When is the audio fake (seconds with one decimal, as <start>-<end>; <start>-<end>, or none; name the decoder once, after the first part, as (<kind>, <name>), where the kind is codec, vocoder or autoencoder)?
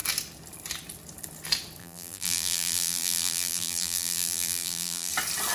1.8-5.1 (vocoder, BigVGAN v2)